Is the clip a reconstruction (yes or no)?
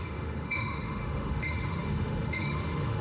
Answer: yes